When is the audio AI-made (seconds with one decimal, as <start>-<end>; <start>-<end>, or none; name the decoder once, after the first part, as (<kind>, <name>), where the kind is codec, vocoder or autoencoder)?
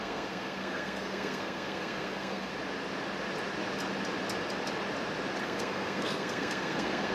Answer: 0.0-2.5 (codec, SNAC); 5.4-7.1